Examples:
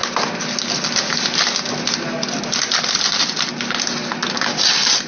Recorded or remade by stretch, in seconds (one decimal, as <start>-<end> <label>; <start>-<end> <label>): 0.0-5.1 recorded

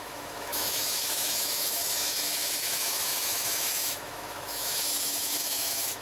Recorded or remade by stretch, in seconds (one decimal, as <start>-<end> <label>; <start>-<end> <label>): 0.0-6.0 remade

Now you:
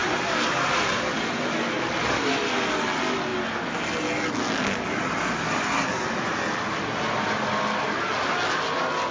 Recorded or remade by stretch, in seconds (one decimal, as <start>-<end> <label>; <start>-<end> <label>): 0.0-9.1 recorded

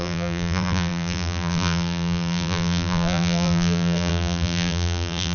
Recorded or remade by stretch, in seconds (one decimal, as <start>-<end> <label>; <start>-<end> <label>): 0.0-5.3 remade